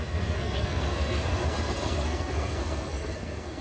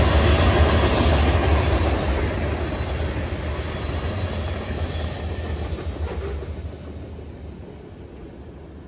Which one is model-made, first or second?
first